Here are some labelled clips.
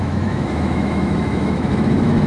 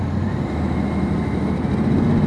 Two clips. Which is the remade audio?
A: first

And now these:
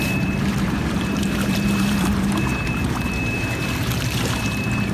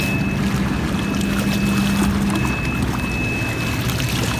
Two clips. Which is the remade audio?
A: first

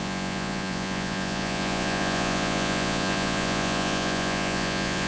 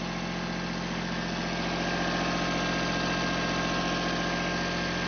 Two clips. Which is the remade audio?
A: first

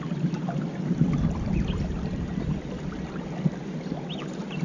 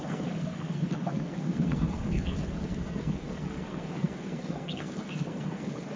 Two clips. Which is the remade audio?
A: second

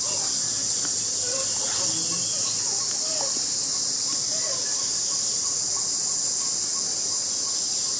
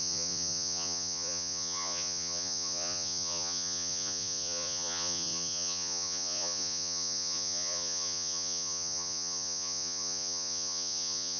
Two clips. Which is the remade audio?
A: second